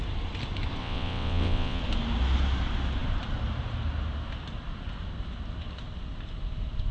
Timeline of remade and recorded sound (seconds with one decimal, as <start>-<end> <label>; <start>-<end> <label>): 0.0-0.8 recorded; 0.8-1.8 remade; 1.8-6.9 recorded